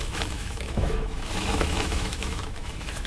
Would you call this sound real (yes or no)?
no